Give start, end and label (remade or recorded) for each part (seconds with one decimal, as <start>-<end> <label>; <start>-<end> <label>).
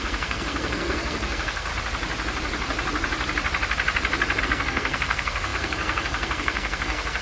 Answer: 0.0-1.7 remade; 1.7-4.4 recorded; 4.4-7.2 remade